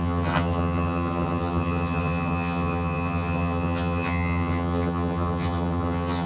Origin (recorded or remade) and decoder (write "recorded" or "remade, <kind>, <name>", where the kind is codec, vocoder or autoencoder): remade, vocoder, HiFi-GAN